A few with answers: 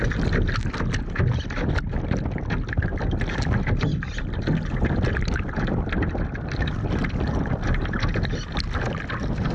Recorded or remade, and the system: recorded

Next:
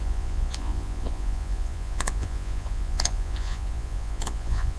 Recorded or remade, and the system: remade, vocoder, Vocos